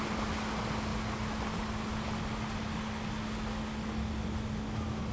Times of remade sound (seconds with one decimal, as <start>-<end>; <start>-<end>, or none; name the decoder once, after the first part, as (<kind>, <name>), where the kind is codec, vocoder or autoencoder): none

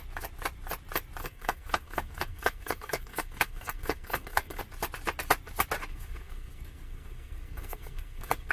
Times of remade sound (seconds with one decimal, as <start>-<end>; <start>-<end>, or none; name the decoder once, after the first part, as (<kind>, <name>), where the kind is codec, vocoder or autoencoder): 1.2-4.6 (codec, SNAC); 5.9-8.5

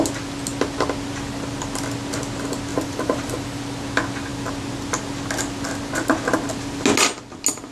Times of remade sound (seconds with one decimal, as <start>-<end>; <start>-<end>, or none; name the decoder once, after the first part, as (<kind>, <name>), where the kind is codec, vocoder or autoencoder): 2.7-3.6 (vocoder, BigVGAN v2)